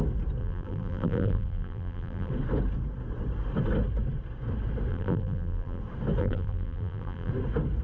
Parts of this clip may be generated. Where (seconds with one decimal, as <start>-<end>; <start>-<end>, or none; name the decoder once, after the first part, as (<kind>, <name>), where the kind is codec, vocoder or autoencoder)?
0.4-2.3 (vocoder, BigVGAN v2); 4.9-5.8; 6.2-7.3